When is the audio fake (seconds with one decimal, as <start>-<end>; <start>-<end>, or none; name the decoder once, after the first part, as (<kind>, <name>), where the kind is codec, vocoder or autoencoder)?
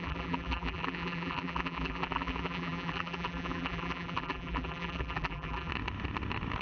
0.0-5.7 (vocoder, BigVGAN v2)